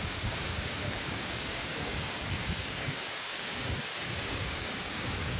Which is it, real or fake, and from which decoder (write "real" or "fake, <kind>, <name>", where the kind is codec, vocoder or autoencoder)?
fake, codec, DAC